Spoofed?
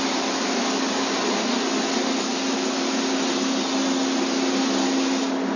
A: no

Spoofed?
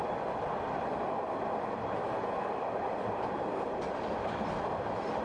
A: no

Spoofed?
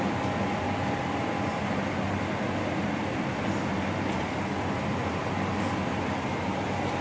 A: no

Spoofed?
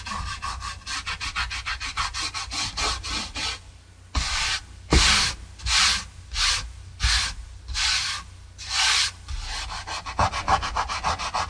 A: no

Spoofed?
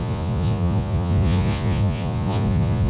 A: yes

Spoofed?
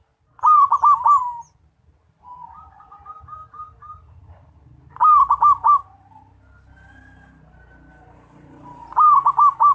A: no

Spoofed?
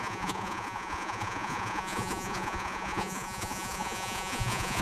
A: yes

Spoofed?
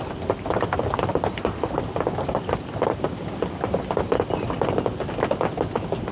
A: no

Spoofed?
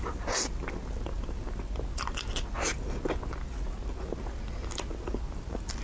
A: no